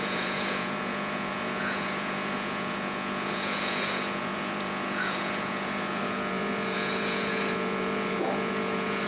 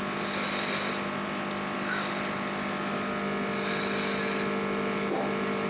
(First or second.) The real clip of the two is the second